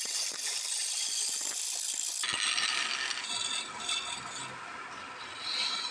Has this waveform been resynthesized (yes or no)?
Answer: no